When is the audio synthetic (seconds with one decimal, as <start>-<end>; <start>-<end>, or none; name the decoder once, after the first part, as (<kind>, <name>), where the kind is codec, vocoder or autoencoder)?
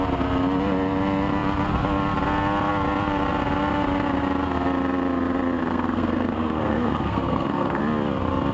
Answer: 5.6-7.8 (codec, SNAC)